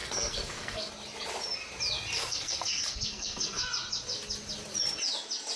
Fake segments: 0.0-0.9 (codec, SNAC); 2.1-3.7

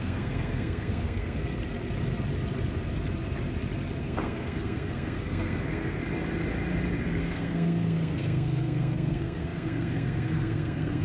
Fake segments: 0.0-1.4 (codec, SNAC); 4.0-6.0; 7.0-11.0

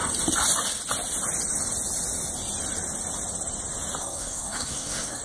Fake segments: 4.0-5.2 (codec, SNAC)